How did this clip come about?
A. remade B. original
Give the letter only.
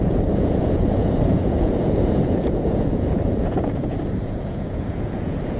A